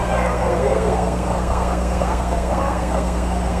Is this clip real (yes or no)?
no